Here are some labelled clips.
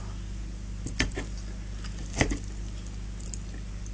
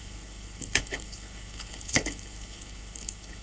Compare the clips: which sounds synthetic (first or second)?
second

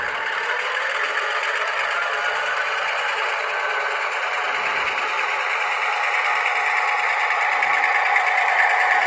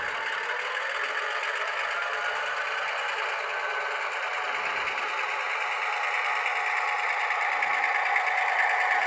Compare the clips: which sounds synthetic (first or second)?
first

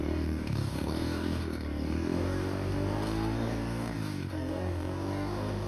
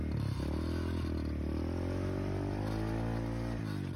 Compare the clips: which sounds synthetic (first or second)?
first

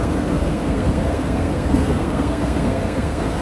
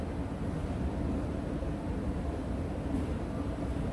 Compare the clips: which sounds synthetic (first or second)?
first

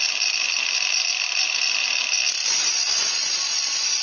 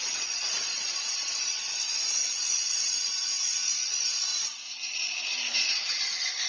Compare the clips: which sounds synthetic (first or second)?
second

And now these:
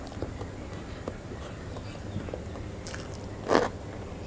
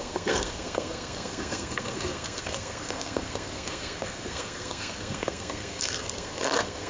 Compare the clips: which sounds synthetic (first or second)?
second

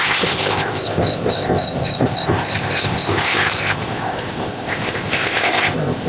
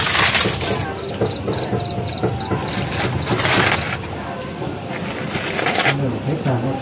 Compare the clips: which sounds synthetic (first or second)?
first